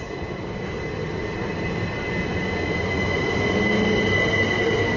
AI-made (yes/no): no